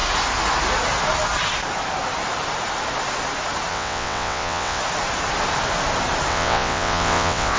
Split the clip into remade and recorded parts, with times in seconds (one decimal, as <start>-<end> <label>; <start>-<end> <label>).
0.0-3.7 recorded; 3.7-4.8 remade; 4.8-6.3 recorded; 6.3-7.6 remade